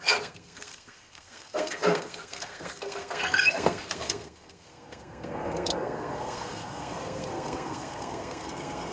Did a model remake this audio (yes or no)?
yes